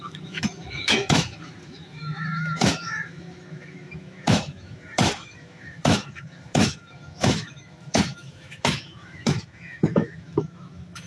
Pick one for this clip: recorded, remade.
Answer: remade